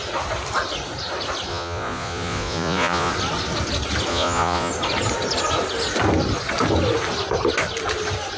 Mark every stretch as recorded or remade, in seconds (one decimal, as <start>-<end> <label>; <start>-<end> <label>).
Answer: 0.0-1.5 recorded; 1.5-3.1 remade; 3.1-4.1 recorded; 4.1-4.7 remade; 4.7-8.4 recorded

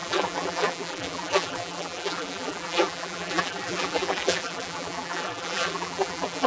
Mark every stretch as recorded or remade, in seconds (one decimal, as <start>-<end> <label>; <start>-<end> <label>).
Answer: 0.0-6.5 remade

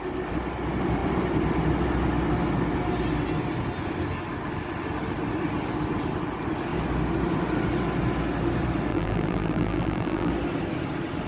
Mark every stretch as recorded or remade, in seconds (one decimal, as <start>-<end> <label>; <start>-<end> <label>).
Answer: 0.0-8.9 recorded; 8.9-10.3 remade; 10.3-11.3 recorded

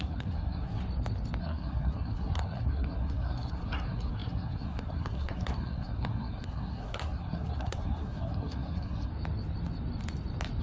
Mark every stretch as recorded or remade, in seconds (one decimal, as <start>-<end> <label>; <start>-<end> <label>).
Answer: 0.0-0.8 remade; 0.8-1.4 recorded; 1.4-9.1 remade; 9.1-10.6 recorded

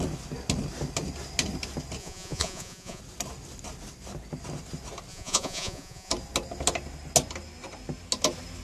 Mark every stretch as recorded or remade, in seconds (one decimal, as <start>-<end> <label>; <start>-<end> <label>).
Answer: 0.0-2.0 recorded; 2.0-3.0 remade; 3.0-5.1 recorded; 5.1-6.1 remade; 6.1-8.6 recorded

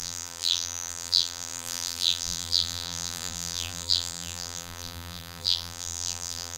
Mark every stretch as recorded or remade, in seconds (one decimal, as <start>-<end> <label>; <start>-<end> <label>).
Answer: 0.0-6.6 remade

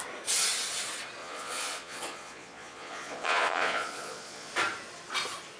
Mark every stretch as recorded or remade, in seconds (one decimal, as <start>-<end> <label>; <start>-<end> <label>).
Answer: 0.0-1.2 recorded; 1.2-4.5 remade; 4.5-5.6 recorded